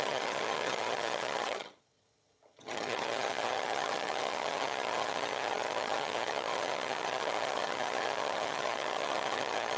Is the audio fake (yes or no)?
yes